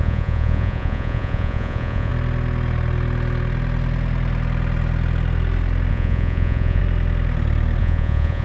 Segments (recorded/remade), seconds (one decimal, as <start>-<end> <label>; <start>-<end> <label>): 0.0-2.1 remade; 2.1-5.9 recorded; 5.9-6.8 remade; 6.8-7.8 recorded; 7.8-8.4 remade